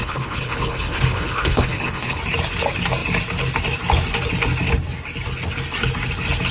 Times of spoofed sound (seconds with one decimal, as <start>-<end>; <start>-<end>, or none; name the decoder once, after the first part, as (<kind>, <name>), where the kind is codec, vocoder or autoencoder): 0.0-2.2 (codec, HILCodec)